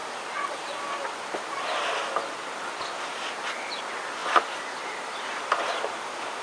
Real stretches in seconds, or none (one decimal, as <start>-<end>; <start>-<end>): 0.0-4.2